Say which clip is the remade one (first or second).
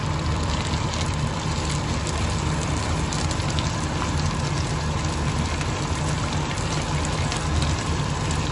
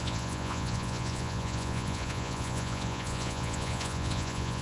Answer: second